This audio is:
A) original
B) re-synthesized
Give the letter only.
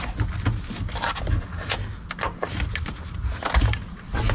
A